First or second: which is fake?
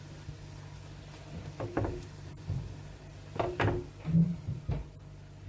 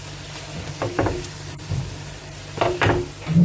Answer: second